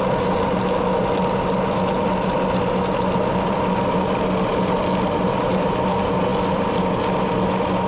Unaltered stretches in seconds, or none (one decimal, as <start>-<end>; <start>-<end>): 0.0-7.9